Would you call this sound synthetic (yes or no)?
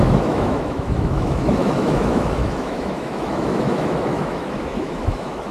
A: yes